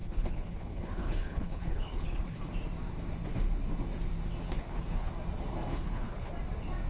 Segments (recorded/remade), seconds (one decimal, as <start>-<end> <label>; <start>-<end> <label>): 0.0-2.5 remade; 2.5-4.4 recorded; 4.4-5.1 remade; 5.1-5.7 recorded; 5.7-6.3 remade; 6.3-6.9 recorded